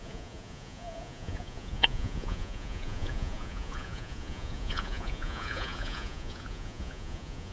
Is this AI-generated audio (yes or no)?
yes